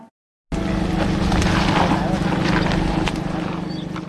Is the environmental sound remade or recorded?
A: recorded